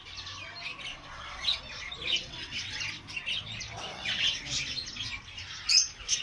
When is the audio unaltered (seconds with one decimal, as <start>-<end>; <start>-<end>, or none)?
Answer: 0.0-0.9; 1.6-2.2; 2.8-3.9; 4.4-6.2